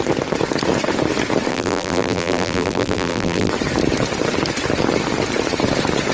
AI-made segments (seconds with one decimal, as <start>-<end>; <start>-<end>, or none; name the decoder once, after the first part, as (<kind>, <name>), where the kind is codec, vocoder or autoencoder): 1.5-3.5 (vocoder, BigVGAN v2)